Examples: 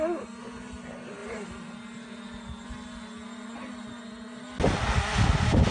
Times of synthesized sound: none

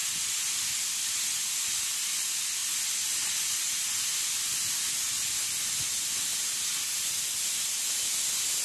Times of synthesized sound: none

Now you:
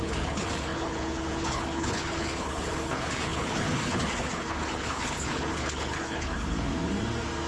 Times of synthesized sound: 0.0-6.7 (codec, HILCodec)